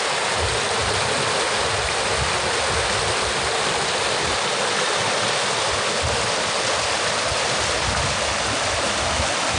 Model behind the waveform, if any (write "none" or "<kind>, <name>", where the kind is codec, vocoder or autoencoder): none